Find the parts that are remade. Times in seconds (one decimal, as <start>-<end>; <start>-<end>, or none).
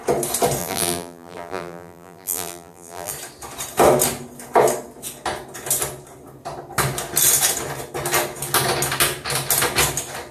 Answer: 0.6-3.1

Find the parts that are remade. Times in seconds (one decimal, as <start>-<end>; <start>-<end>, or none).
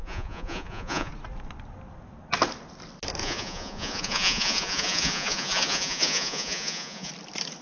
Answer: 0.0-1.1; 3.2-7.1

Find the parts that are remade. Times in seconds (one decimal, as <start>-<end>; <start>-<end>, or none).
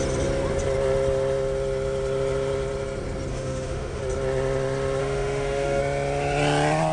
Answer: 3.3-4.0; 5.0-5.8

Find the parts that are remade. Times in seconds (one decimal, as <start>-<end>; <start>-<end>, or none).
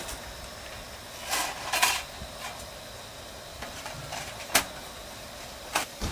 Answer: 3.5-4.5; 5.0-6.1